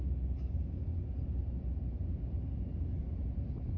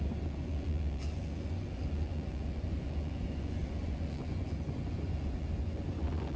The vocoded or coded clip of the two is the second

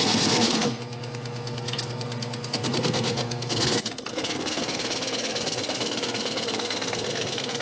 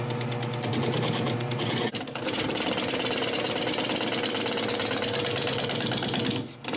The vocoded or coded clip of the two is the first